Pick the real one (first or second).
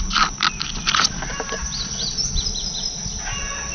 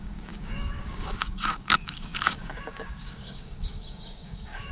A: first